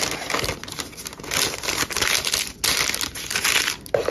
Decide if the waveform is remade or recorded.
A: recorded